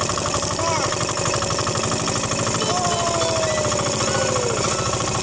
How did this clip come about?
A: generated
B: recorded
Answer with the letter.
B